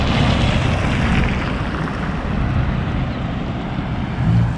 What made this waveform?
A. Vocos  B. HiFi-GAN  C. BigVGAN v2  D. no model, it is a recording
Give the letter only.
D